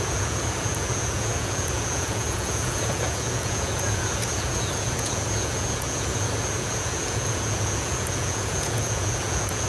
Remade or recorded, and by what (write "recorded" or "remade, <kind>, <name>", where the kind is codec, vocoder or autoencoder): remade, vocoder, Vocos